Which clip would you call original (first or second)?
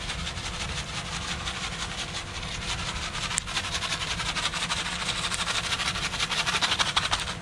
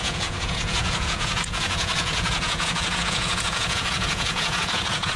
first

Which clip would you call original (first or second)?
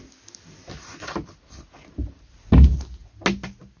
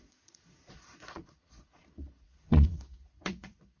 first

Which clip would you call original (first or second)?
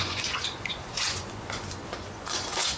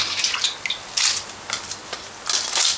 second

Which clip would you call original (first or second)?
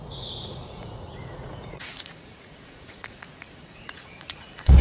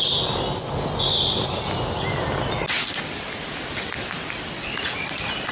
second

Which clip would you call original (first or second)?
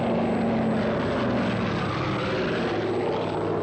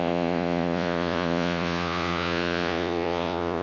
first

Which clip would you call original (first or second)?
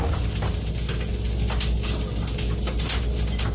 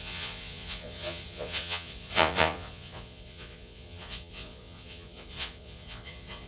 first